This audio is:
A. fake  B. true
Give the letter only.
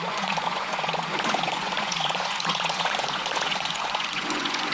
A